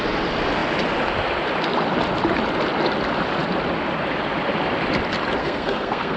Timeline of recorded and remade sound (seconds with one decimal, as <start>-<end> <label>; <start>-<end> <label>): 0.0-5.4 recorded; 5.4-6.2 remade